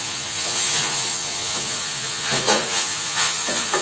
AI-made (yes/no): yes